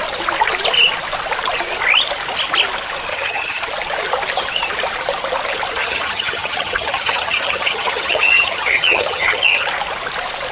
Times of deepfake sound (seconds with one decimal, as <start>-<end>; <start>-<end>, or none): 3.1-3.6; 5.8-9.7